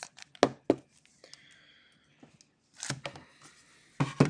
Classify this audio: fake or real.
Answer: real